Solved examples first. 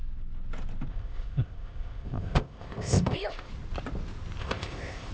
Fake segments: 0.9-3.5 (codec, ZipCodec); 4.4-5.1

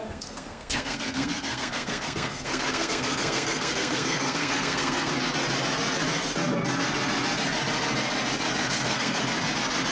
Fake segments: 0.0-5.1 (codec, SNAC); 8.6-9.2

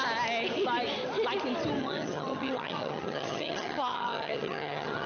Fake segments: 1.8-5.1 (vocoder, HiFi-GAN)

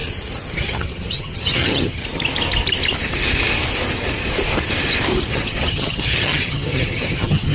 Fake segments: 0.5-2.0 (vocoder, HiFi-GAN); 5.3-7.5

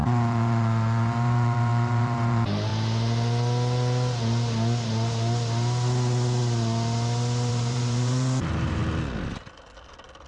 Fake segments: 0.0-2.7 (vocoder, BigVGAN v2); 7.5-8.8